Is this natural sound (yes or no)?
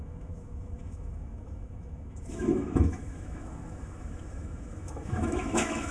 no